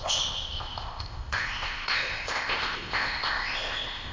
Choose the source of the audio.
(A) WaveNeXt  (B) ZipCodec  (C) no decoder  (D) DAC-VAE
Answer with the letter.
B